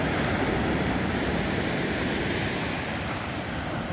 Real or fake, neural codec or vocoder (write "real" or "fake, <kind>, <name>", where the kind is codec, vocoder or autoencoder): real